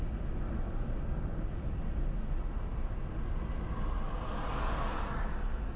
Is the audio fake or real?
real